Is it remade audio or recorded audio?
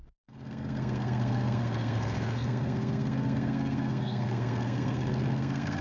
remade